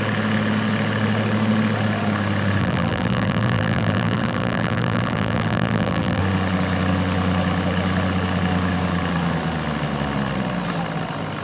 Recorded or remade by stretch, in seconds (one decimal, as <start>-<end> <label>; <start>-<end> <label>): 0.0-2.6 recorded; 2.6-6.2 remade; 6.2-11.4 recorded